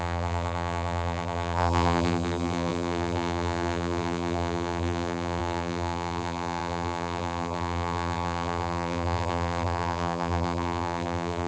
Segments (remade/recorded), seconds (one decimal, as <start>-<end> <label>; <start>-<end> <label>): 0.0-11.5 remade